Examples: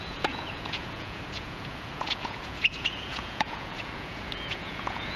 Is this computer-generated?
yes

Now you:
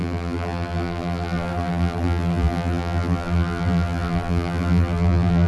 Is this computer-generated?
yes